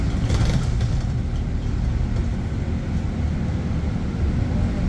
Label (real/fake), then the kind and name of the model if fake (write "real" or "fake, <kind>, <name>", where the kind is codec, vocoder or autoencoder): real